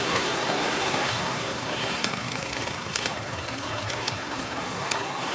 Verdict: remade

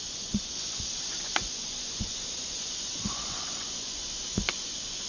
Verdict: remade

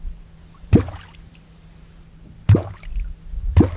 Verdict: recorded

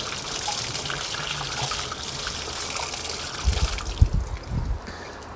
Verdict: recorded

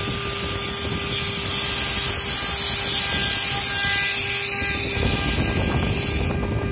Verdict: recorded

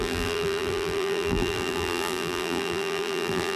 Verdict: remade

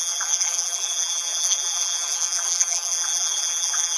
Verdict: remade